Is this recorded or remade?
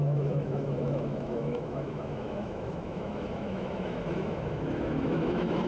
remade